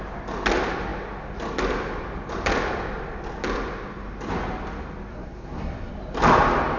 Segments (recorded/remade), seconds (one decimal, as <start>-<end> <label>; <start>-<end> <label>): 0.0-5.1 recorded; 5.1-5.9 remade; 5.9-6.8 recorded